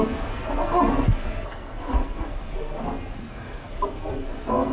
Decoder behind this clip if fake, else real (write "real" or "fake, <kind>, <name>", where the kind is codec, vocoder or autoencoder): fake, codec, SNAC